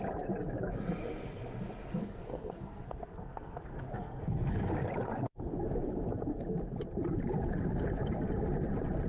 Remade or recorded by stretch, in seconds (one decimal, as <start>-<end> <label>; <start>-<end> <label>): 0.0-2.0 recorded; 2.0-4.7 remade; 4.7-9.1 recorded